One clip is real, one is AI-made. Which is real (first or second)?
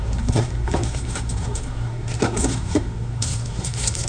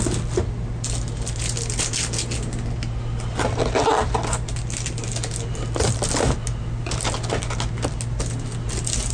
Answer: second